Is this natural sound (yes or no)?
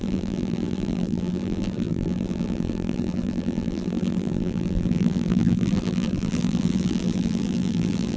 no